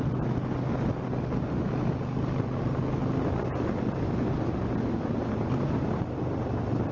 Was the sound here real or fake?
real